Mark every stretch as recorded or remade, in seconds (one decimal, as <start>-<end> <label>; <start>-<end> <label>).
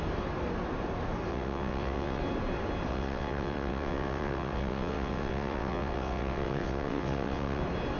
0.0-1.3 recorded; 1.3-2.2 remade; 2.2-2.9 recorded; 2.9-7.6 remade; 7.6-8.0 recorded